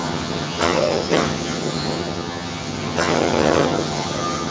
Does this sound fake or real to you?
fake